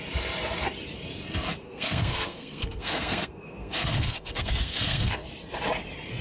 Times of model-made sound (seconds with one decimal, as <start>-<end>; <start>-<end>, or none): 1.6-5.3